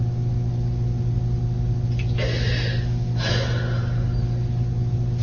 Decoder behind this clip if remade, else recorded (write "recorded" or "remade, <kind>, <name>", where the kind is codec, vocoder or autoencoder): recorded